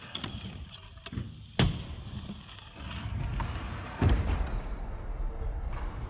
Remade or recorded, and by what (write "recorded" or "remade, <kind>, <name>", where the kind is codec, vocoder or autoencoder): recorded